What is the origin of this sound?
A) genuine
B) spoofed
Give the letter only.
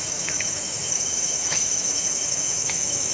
B